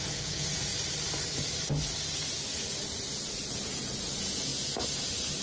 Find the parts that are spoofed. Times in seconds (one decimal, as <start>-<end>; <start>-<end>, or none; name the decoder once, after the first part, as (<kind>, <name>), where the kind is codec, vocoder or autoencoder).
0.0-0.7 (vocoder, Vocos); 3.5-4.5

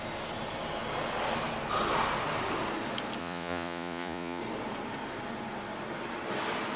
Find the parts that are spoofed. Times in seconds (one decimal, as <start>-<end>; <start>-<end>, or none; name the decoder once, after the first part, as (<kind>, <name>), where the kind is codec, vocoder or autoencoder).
3.2-4.4 (vocoder, Vocos)

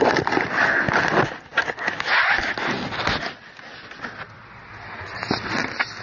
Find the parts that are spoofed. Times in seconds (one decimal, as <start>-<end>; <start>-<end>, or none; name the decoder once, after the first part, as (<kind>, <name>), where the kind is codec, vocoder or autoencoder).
none